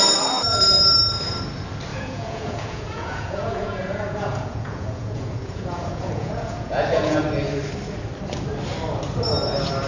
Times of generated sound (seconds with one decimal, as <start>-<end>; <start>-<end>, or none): 1.9-7.2